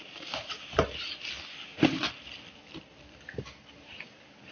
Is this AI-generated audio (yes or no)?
no